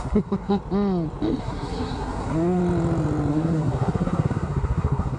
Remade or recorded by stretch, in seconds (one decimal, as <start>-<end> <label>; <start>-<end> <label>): 0.0-0.6 remade; 0.6-1.4 recorded; 1.4-2.6 remade; 2.6-3.3 recorded; 3.3-5.2 remade